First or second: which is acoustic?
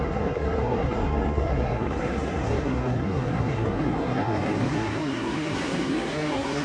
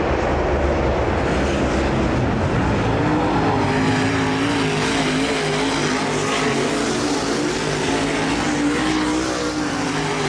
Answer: second